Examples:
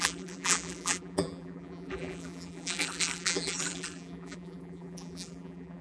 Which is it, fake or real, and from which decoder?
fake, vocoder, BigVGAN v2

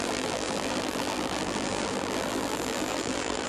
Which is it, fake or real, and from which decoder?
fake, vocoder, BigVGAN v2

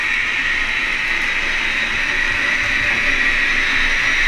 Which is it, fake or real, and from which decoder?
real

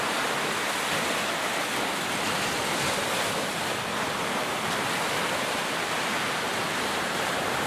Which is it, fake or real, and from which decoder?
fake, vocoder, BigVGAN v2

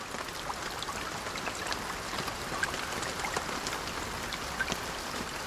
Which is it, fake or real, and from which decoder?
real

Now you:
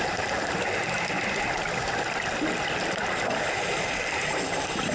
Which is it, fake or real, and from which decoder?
fake, vocoder, BigVGAN v2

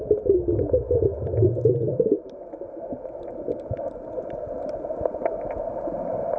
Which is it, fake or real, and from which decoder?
fake, vocoder, BigVGAN v2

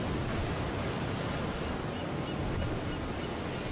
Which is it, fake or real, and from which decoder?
real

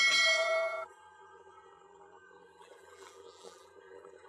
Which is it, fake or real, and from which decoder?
fake, vocoder, BigVGAN v2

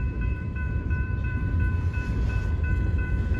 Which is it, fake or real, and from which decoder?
fake, vocoder, BigVGAN v2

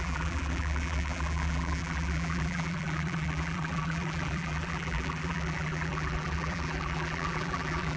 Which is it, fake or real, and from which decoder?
fake, vocoder, BigVGAN v2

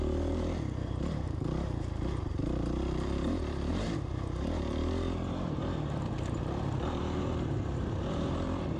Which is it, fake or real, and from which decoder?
fake, vocoder, BigVGAN v2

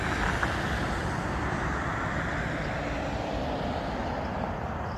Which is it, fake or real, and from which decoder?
real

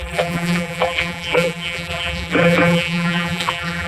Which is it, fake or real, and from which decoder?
fake, vocoder, BigVGAN v2